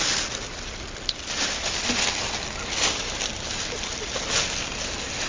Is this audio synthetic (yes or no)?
no